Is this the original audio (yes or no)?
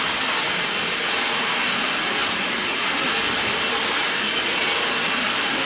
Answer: yes